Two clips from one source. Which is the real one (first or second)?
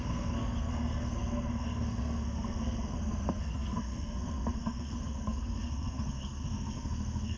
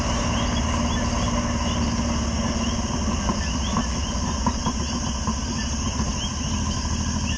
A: second